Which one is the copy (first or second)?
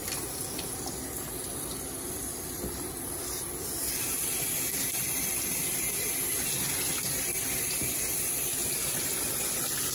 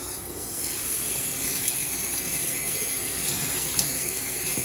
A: second